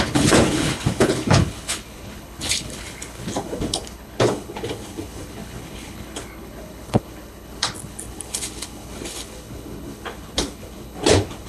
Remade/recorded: remade